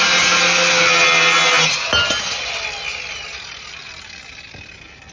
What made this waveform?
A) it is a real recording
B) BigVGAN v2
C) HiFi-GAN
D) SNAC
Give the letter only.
A